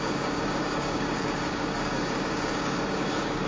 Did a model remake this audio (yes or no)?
yes